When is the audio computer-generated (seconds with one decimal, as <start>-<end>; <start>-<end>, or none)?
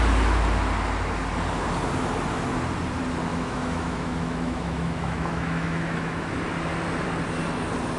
3.3-6.3